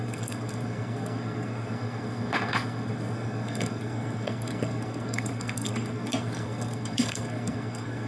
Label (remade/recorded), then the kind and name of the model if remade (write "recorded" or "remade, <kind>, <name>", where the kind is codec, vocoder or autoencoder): remade, codec, SNAC